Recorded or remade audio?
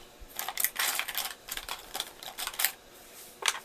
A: remade